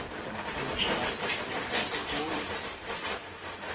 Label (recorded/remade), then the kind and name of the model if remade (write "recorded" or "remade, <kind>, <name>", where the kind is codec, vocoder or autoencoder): recorded